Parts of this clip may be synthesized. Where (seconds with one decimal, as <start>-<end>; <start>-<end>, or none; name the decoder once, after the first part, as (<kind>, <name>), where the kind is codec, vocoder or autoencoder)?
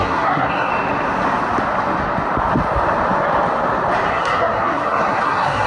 0.0-0.7 (codec, SNAC); 4.1-5.7